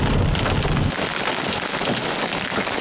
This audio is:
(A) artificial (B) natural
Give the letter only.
B